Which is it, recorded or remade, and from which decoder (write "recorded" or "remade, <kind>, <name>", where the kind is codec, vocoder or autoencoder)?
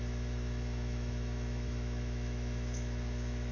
remade, autoencoder, DAC-VAE